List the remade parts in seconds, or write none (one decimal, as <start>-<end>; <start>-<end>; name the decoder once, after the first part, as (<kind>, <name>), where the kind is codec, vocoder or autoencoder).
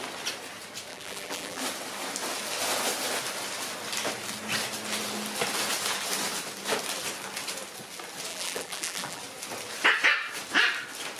0.9-1.6 (vocoder, BigVGAN v2); 8.3-9.2